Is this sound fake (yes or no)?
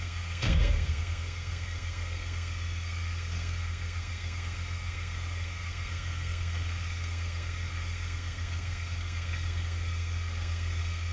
yes